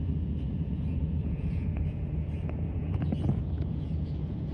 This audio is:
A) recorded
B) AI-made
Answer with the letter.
B